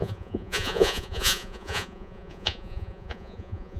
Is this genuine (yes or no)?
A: no